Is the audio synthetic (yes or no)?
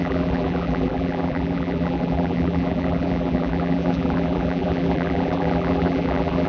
yes